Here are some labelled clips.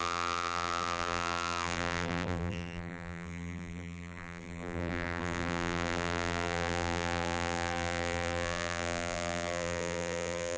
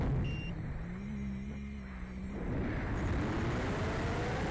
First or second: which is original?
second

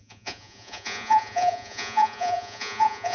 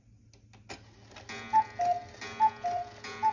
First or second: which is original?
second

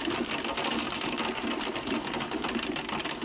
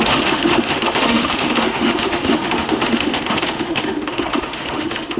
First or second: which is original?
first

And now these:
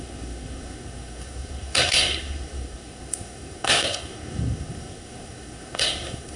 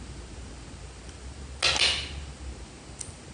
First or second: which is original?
second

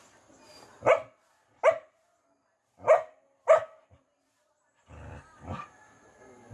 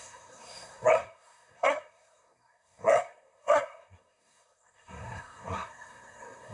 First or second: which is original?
first